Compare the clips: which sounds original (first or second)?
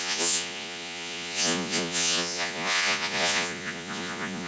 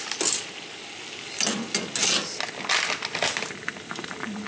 second